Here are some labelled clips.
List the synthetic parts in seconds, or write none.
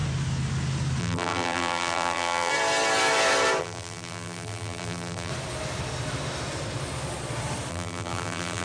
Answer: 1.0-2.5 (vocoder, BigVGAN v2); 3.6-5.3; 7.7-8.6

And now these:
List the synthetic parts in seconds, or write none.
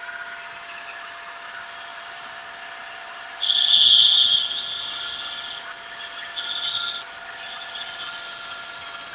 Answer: 1.9-2.4 (vocoder, BigVGAN v2)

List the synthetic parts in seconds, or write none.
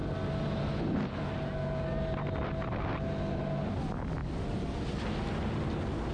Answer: 4.2-4.9 (vocoder, BigVGAN v2)